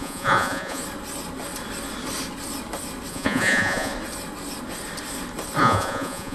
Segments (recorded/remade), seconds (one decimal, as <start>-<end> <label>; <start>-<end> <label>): 0.0-0.8 remade; 0.8-3.1 recorded; 3.1-3.9 remade; 3.9-5.6 recorded; 5.6-6.3 remade